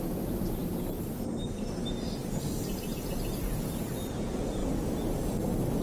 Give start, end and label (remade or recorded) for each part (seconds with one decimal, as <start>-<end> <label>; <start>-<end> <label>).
0.0-0.6 remade; 0.6-4.1 recorded; 4.1-4.6 remade; 4.6-5.8 recorded